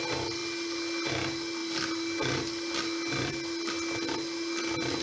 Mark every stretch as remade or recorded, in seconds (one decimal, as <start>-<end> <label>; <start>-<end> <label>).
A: 0.0-5.0 recorded